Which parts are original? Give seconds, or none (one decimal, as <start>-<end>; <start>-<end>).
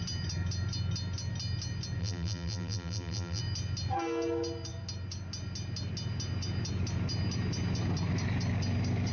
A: 0.0-2.0; 3.4-9.1